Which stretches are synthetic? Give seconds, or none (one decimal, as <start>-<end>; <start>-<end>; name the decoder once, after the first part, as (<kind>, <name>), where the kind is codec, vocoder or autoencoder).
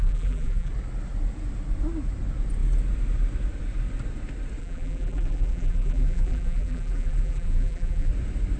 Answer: 0.0-0.7 (vocoder, BigVGAN v2); 4.6-8.1